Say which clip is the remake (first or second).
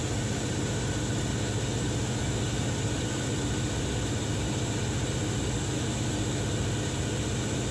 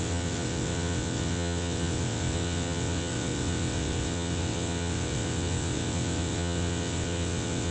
second